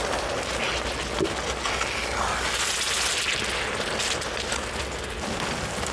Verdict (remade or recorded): recorded